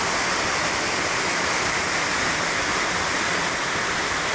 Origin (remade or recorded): recorded